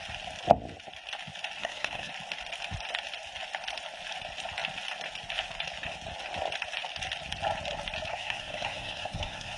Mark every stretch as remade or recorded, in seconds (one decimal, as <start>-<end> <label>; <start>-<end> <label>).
0.0-1.6 recorded; 1.6-2.1 remade; 2.1-8.1 recorded; 8.1-9.6 remade